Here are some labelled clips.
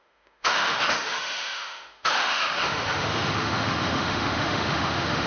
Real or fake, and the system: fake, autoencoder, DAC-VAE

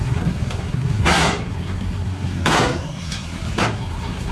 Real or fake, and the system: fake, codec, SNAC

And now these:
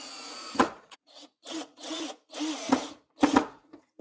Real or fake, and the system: fake, vocoder, Vocos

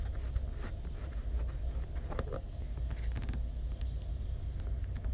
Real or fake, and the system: real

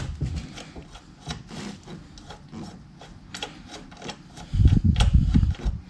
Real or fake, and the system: real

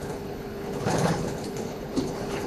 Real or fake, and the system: fake, codec, HILCodec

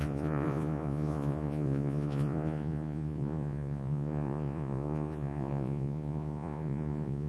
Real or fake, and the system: fake, vocoder, Vocos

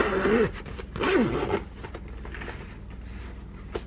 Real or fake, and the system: real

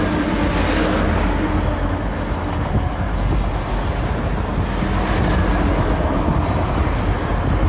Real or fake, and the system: real